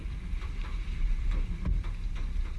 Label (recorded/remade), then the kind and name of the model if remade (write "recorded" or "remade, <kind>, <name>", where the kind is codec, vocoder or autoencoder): recorded